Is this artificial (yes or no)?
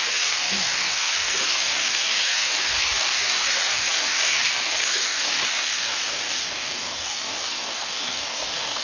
yes